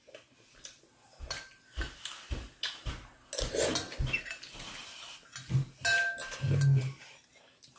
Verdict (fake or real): real